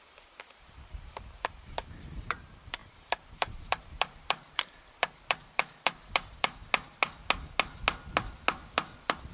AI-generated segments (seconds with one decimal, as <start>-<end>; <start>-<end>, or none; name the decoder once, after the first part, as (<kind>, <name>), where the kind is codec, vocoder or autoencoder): 0.0-6.6 (vocoder, BigVGAN v2)

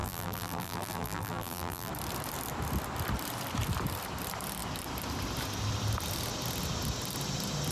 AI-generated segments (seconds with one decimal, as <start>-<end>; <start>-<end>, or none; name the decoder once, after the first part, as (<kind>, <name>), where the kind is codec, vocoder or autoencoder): 0.0-1.9 (vocoder, BigVGAN v2)